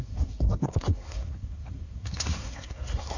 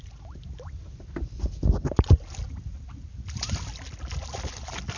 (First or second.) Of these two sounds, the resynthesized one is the first